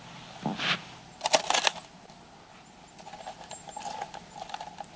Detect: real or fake real